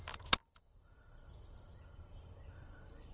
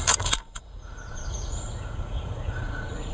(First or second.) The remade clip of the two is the second